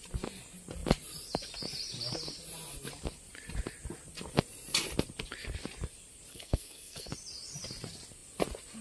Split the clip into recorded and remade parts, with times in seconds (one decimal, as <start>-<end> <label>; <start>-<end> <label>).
0.0-6.3 recorded; 6.3-7.1 remade; 7.1-8.8 recorded